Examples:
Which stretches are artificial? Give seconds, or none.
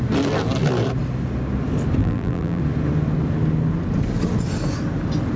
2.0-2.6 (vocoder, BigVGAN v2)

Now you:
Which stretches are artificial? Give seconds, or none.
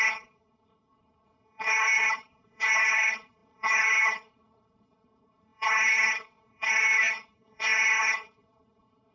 0.0-9.1 (codec, HILCodec)